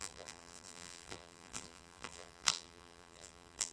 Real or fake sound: fake